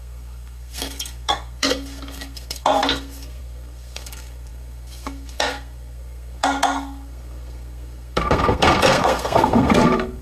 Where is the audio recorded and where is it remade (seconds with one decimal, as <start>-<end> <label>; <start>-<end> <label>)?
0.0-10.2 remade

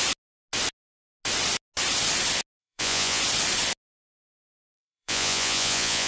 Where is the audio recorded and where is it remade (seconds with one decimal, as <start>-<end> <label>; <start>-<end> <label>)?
0.0-2.6 recorded; 2.6-3.2 remade; 3.2-4.4 recorded; 4.4-6.1 remade

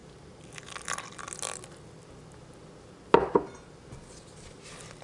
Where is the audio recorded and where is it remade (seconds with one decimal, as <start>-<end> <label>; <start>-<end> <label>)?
0.0-5.0 recorded

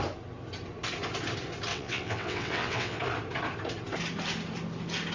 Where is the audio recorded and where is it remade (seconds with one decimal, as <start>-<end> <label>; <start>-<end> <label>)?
0.0-1.7 recorded; 1.7-3.0 remade; 3.0-5.1 recorded

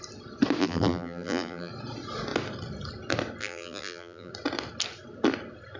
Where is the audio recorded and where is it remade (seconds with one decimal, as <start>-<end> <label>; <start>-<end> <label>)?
0.0-0.6 recorded; 0.6-1.7 remade; 1.7-3.4 recorded; 3.4-4.3 remade; 4.3-5.8 recorded

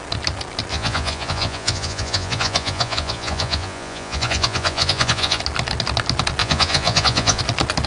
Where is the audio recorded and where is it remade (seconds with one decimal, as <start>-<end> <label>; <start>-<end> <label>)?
0.0-0.7 recorded; 0.7-5.4 remade; 5.4-6.4 recorded; 6.4-7.4 remade; 7.4-7.9 recorded

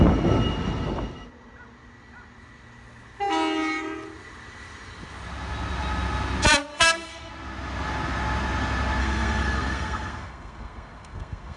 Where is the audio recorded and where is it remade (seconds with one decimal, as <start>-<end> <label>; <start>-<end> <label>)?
0.0-6.7 recorded; 6.7-7.3 remade; 7.3-9.0 recorded; 9.0-11.6 remade

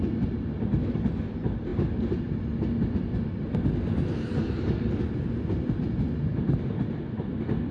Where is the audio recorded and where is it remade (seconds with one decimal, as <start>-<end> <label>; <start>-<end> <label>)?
0.0-7.7 recorded